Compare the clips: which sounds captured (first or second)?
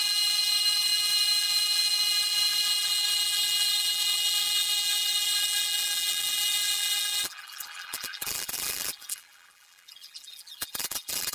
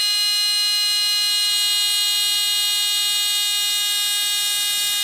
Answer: second